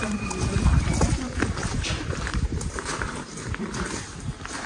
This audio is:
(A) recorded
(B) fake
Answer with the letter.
B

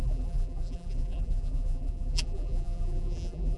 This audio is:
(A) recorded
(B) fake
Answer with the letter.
B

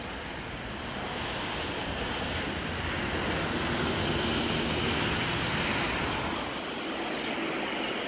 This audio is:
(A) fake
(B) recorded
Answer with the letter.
B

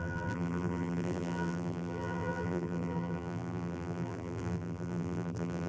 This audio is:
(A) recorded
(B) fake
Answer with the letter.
B